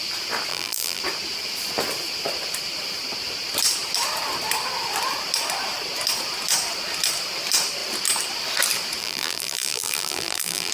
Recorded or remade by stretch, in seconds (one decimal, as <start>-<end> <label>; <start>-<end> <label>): 0.0-0.5 recorded; 0.5-1.0 remade; 1.0-9.0 recorded; 9.0-10.7 remade